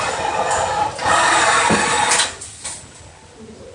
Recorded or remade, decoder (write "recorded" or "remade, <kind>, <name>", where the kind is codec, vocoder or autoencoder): recorded